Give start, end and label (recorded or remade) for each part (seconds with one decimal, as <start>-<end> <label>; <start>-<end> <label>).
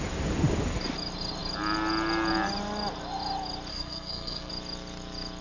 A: 0.0-3.7 recorded; 3.7-4.5 remade; 4.5-5.4 recorded